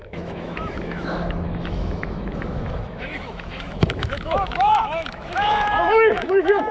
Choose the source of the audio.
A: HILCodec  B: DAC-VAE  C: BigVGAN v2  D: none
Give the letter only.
B